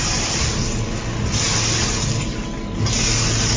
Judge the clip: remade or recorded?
recorded